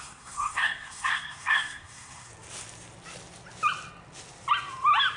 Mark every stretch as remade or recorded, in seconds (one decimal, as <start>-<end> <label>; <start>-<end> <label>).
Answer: 0.0-2.3 remade; 2.3-5.2 recorded